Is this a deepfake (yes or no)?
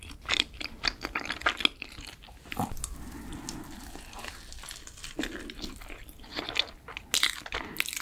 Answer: no